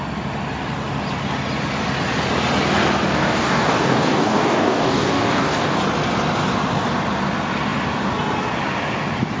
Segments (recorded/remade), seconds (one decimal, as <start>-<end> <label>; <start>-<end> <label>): 0.0-3.1 recorded; 3.1-5.8 remade; 5.8-9.4 recorded